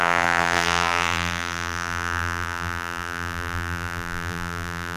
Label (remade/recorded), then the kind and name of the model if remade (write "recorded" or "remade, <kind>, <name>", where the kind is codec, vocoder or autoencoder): remade, vocoder, BigVGAN v2